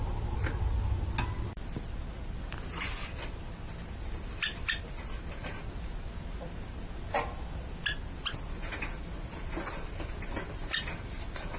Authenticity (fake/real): real